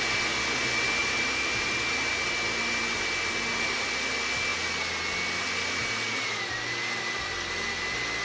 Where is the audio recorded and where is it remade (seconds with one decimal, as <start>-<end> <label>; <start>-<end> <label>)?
0.0-1.0 recorded; 1.0-2.1 remade; 2.1-8.2 recorded